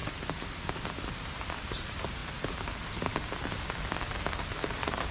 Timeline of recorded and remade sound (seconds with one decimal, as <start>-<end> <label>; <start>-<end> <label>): 0.0-1.1 recorded; 1.1-2.2 remade; 2.2-4.4 recorded; 4.4-5.1 remade